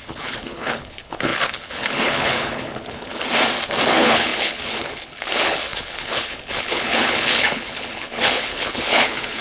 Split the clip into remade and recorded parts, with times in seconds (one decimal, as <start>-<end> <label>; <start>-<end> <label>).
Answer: 0.0-3.3 remade; 3.3-3.9 recorded; 3.9-9.4 remade